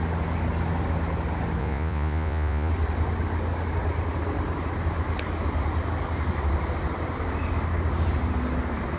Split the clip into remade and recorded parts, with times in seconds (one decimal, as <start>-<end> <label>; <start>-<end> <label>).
0.0-1.6 recorded; 1.6-2.7 remade; 2.7-9.0 recorded